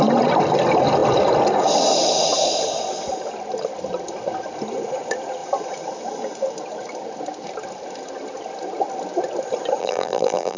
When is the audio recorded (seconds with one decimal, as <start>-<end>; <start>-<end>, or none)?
0.0-9.8